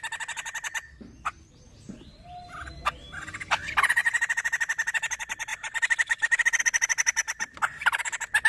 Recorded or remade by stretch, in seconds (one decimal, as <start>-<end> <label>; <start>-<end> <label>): 0.0-8.5 recorded